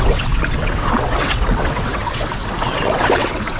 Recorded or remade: remade